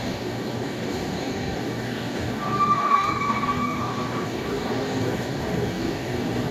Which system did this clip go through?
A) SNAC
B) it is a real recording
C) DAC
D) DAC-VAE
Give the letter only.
C